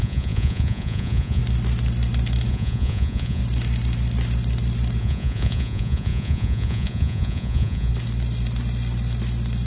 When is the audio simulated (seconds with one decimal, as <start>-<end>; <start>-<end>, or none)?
0.0-1.4; 2.5-3.4; 5.0-7.9